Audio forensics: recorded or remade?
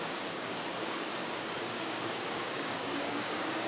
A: remade